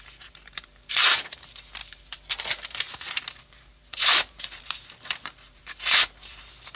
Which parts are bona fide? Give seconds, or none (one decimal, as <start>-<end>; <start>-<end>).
none